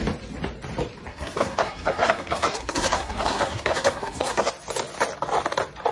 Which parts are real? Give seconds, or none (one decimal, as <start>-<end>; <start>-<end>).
0.0-1.1; 4.5-5.9